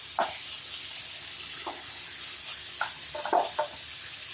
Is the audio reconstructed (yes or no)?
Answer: no